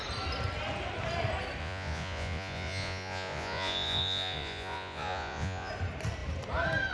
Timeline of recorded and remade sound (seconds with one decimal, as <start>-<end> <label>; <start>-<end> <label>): 0.0-1.6 recorded; 1.6-5.7 remade; 5.7-6.9 recorded